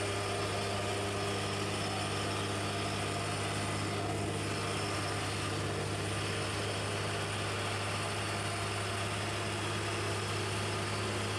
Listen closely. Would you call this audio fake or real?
real